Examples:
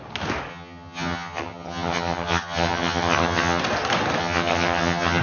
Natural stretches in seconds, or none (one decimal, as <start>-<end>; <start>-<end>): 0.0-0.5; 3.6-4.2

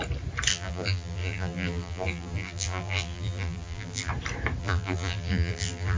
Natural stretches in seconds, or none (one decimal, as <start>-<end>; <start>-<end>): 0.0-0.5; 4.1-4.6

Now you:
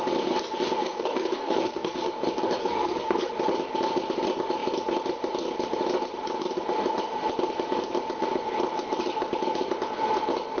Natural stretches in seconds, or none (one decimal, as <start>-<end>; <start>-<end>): 0.0-0.8; 2.1-2.6; 3.3-10.6

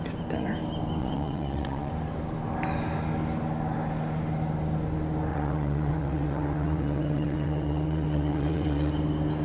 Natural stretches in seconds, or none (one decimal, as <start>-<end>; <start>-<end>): 0.0-1.0; 1.9-5.3; 8.9-9.4

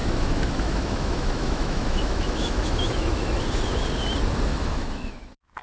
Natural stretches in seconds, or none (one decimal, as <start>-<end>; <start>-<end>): 3.4-4.5

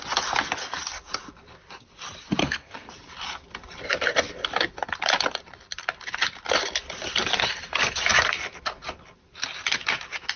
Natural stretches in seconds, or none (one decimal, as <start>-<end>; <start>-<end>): 0.0-2.4; 2.9-10.4